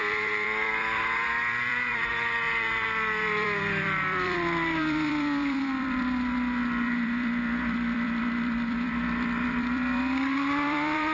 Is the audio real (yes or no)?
no